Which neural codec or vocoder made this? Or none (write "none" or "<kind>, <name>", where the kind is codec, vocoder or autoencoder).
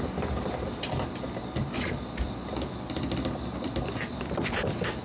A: none